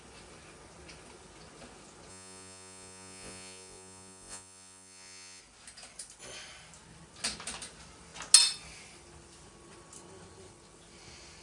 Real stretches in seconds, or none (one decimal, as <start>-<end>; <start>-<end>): 0.0-2.1; 5.4-11.4